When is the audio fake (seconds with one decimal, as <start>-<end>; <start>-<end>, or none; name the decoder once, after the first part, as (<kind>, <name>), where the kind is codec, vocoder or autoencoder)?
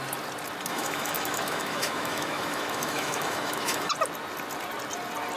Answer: 0.7-3.9 (autoencoder, DAC-VAE)